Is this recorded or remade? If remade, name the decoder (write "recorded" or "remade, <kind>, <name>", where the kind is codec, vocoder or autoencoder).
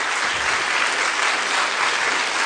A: recorded